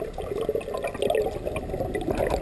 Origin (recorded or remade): recorded